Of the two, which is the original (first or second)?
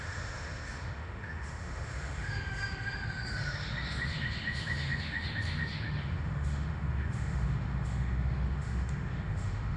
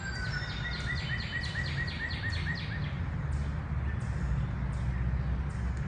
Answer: second